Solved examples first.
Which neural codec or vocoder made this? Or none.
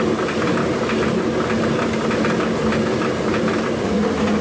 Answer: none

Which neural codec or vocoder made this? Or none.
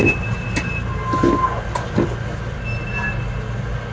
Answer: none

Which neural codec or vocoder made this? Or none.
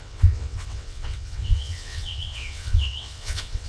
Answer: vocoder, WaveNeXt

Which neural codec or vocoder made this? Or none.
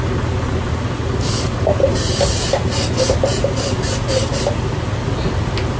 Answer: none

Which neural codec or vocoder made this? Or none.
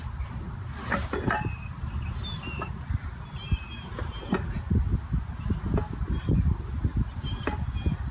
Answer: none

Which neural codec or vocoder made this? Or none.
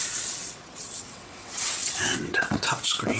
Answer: vocoder, WaveNeXt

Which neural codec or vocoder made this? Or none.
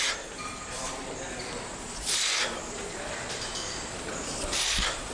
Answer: none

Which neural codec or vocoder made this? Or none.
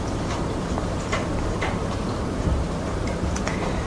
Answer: none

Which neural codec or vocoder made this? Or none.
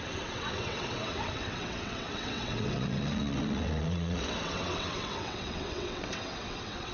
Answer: vocoder, WaveNeXt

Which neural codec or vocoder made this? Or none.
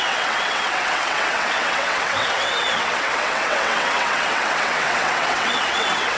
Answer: vocoder, WaveNeXt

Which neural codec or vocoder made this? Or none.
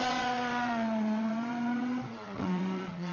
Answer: vocoder, WaveNeXt